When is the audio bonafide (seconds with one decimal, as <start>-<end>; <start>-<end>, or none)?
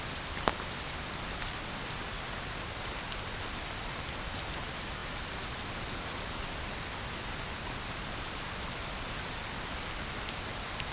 0.0-10.9